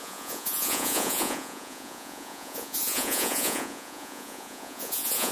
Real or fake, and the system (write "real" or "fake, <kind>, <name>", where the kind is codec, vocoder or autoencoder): fake, vocoder, Vocos